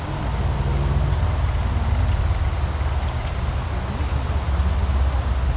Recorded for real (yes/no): yes